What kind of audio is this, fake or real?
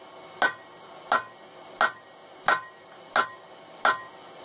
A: real